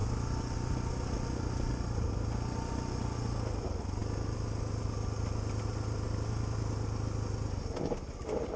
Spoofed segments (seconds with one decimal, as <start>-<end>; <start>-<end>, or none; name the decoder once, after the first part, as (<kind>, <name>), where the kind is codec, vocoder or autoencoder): none